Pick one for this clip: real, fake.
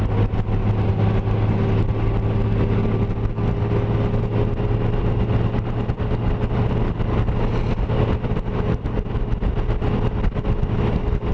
real